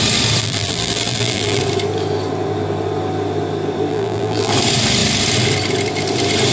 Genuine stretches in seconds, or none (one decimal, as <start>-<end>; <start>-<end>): 0.0-0.4; 1.6-3.9; 4.5-6.5